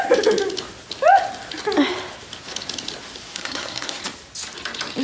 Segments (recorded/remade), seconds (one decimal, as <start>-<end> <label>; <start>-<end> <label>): 0.0-3.3 recorded; 3.3-4.0 remade; 4.0-5.0 recorded